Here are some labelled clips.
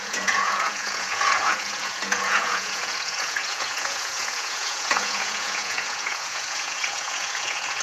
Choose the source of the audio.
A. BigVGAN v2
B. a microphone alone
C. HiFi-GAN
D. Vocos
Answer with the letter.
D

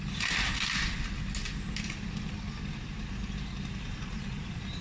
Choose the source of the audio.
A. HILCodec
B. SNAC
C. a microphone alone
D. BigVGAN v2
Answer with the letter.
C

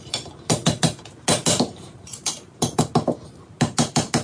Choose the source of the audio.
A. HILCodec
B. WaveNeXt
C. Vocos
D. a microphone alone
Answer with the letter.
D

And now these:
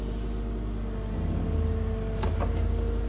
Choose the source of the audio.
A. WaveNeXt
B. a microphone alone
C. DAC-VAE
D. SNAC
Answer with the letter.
B